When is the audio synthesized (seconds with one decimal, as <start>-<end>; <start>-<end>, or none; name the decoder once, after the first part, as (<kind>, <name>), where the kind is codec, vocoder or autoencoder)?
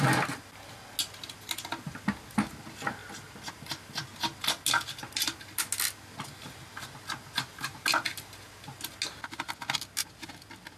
none